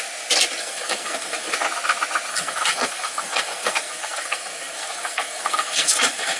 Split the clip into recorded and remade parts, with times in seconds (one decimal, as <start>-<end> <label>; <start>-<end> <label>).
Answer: 0.0-0.6 recorded; 0.6-1.5 remade; 1.5-2.3 recorded; 2.3-6.4 remade